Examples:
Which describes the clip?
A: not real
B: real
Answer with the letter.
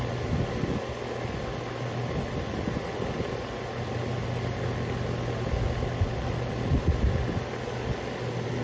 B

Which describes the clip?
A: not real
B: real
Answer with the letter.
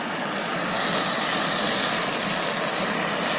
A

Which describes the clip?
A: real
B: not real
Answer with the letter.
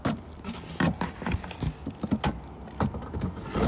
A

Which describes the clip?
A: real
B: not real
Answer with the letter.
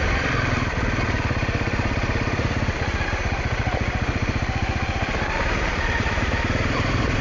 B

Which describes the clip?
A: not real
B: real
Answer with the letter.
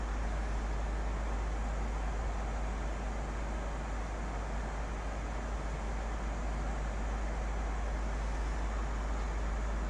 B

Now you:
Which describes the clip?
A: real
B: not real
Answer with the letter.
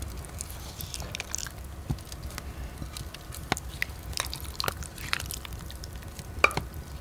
A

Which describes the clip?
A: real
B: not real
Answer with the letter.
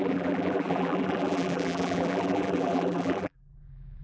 B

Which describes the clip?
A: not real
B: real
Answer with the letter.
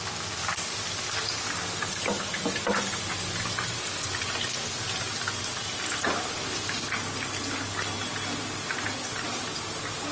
B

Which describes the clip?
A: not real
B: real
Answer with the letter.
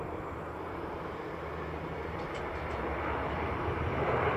A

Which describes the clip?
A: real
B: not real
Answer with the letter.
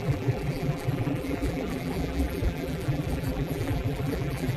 B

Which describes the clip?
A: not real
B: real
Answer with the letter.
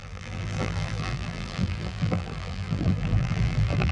A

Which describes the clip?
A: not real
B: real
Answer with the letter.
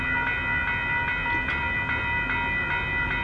B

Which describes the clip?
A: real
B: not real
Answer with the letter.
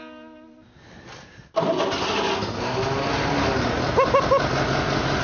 A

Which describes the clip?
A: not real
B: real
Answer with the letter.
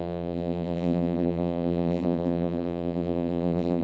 A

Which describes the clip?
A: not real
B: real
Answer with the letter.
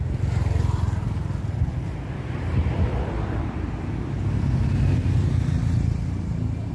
A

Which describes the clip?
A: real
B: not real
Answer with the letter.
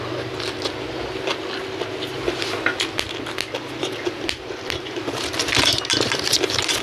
A